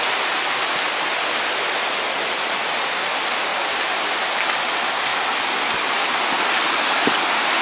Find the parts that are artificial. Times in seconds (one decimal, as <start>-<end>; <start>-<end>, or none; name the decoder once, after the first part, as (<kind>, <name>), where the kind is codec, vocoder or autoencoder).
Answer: 3.5-4.0 (vocoder, BigVGAN v2)